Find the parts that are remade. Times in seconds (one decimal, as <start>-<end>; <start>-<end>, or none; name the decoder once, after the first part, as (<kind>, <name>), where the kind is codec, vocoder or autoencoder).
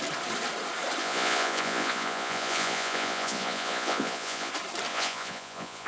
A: 1.0-4.5 (vocoder, Vocos); 4.9-5.9